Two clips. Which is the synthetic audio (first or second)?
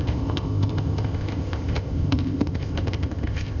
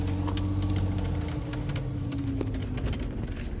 first